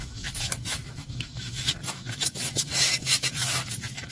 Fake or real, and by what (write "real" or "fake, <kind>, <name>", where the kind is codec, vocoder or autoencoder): fake, autoencoder, DAC-VAE